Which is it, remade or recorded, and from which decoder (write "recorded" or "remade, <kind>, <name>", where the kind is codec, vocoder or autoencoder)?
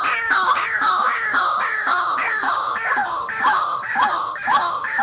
remade, codec, DAC